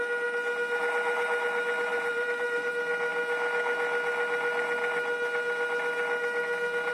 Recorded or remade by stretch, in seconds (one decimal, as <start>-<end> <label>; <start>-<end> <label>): 0.0-1.9 recorded; 1.9-2.7 remade; 2.7-6.9 recorded

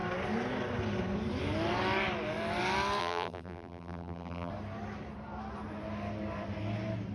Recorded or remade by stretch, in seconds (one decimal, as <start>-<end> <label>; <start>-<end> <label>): 0.0-3.0 recorded; 3.0-4.5 remade; 4.5-7.1 recorded

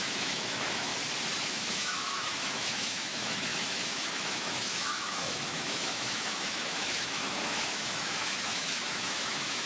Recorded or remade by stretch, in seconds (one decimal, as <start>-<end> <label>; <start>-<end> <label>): 0.0-0.9 remade; 0.9-1.4 recorded; 1.4-9.7 remade

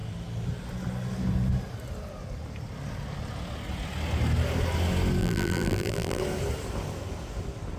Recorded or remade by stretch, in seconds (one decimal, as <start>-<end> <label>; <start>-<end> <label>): 0.0-5.2 recorded; 5.2-6.2 remade; 6.2-7.8 recorded

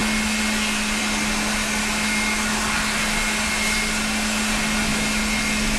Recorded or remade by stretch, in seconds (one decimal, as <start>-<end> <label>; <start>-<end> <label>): 0.0-1.8 recorded; 1.8-2.6 remade; 2.6-5.8 recorded

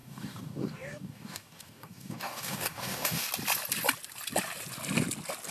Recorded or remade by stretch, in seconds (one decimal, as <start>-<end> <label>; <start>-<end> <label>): 0.0-3.3 remade; 3.3-5.5 recorded